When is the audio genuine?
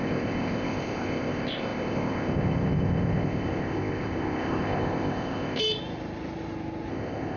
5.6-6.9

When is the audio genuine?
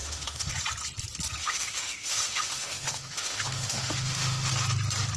0.5-1.4; 4.5-5.2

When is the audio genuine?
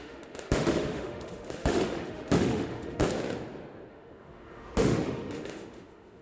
3.0-3.9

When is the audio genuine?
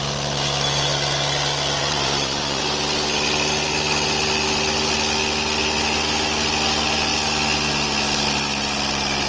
0.0-1.8; 2.6-9.3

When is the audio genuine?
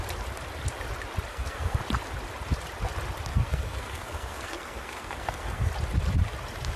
0.0-1.3; 1.8-3.3; 5.7-6.8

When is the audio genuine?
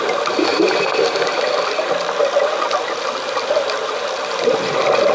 0.0-5.1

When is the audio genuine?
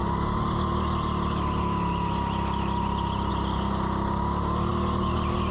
0.0-5.5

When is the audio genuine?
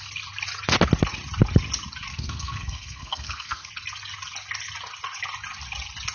0.0-2.1; 3.7-6.1